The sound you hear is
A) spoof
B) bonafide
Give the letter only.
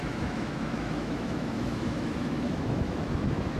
A